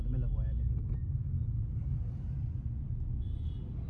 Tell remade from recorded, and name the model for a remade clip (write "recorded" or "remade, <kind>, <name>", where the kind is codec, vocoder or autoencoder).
recorded